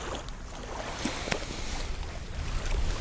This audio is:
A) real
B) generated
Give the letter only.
A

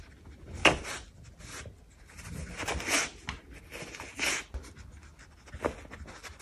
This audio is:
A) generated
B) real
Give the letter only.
B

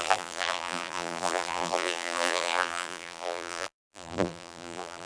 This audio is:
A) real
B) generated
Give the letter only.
B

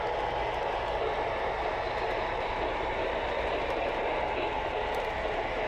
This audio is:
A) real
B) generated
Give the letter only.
B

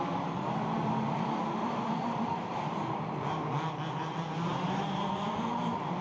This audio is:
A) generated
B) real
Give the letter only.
A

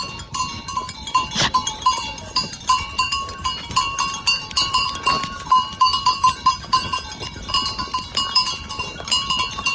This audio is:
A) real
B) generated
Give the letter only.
B